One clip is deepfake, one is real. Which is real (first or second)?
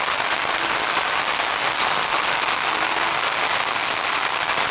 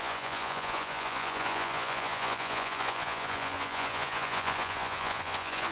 first